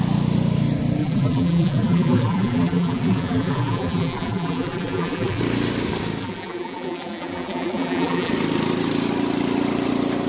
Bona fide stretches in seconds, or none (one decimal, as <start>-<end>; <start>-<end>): 0.0-1.0; 5.4-6.2; 8.3-10.3